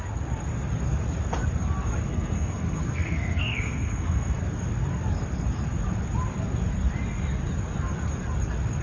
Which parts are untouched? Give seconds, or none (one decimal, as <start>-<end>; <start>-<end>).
0.0-2.1; 4.4-8.8